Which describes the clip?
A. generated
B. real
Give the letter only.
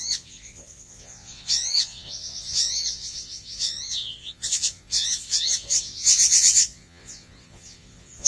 A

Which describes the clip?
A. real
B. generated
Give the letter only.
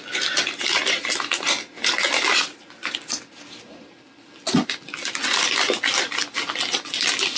A